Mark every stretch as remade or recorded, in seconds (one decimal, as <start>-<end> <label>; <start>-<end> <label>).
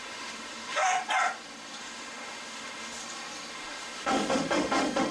0.0-1.0 remade; 1.0-1.8 recorded; 1.8-3.0 remade; 3.0-3.5 recorded; 3.5-5.1 remade